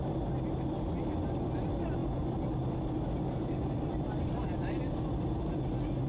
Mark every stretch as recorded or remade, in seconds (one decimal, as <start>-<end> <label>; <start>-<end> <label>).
0.0-6.1 recorded